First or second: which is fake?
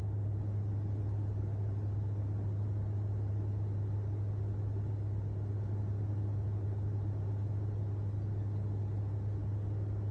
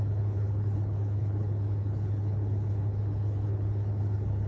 second